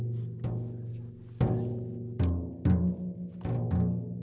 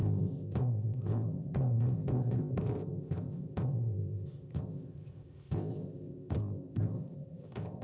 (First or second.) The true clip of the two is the first